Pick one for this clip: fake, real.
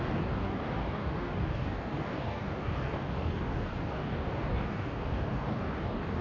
fake